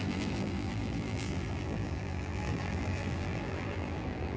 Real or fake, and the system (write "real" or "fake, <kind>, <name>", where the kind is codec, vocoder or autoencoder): fake, vocoder, BigVGAN v2